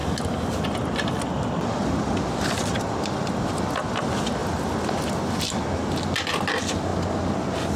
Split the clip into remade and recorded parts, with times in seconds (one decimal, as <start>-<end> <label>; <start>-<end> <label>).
0.0-7.8 recorded